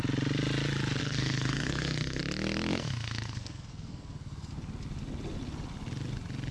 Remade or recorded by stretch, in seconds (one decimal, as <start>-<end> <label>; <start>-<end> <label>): 0.0-1.0 recorded; 1.0-2.2 remade; 2.2-2.7 recorded; 2.7-4.5 remade; 4.5-6.5 recorded